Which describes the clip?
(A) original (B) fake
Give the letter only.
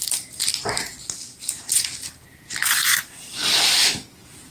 A